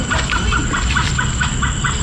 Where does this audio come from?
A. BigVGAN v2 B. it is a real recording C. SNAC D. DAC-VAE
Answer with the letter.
B